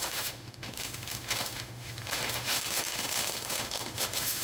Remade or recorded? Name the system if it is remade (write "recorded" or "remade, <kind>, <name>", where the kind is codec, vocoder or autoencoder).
remade, autoencoder, DAC-VAE